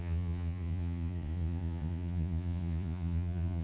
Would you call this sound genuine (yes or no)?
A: no